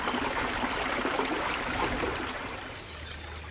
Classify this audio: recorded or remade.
recorded